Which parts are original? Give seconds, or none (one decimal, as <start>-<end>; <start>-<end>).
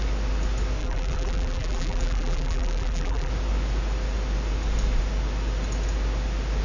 0.0-0.8; 3.3-6.6